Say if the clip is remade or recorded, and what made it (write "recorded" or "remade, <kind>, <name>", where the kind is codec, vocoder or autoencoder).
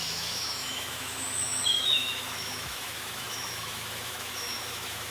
remade, autoencoder, DAC-VAE